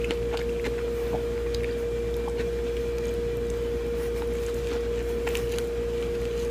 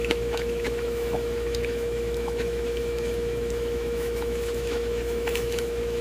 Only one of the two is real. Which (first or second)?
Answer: first